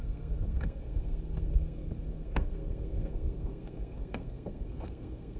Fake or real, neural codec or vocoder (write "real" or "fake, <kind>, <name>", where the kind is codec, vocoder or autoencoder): fake, codec, SNAC